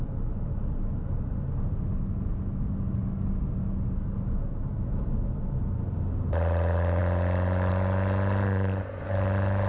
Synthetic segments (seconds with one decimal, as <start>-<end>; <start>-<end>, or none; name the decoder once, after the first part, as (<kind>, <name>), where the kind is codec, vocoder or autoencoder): none